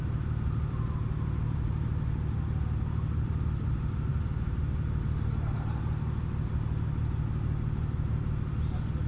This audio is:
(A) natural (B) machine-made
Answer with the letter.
A